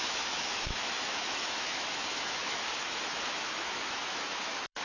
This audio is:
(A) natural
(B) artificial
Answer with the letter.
B